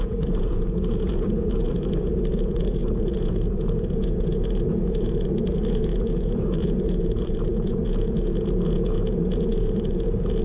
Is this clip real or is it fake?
fake